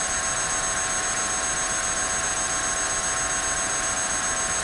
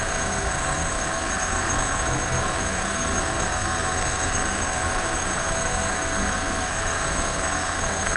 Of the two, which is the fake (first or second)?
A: second